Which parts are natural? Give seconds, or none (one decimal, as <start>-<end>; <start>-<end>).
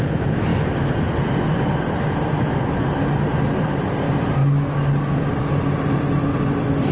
0.0-4.4; 5.5-6.9